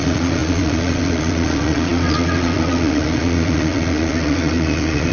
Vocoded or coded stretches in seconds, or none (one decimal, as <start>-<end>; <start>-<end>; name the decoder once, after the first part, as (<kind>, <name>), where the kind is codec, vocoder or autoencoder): 0.0-5.1 (vocoder, Vocos)